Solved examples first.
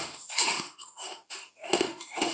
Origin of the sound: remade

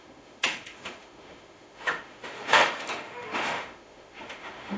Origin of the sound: remade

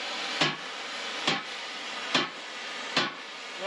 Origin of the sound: recorded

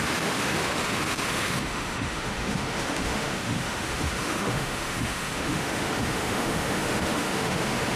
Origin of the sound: remade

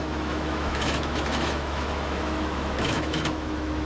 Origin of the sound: remade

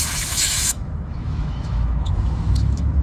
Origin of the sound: remade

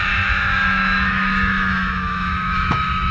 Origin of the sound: remade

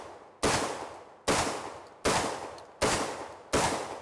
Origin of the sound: recorded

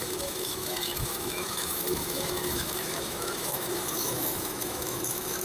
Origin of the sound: remade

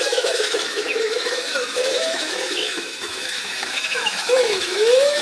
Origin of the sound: remade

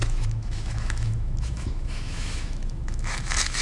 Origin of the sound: remade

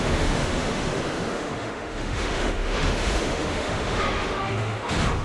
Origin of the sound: remade